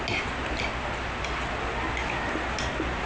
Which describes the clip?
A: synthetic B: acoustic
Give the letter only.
B